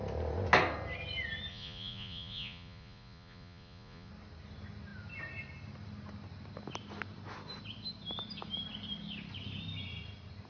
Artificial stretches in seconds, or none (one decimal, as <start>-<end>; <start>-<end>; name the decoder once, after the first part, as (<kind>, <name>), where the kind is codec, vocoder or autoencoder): 1.5-4.1 (vocoder, Vocos)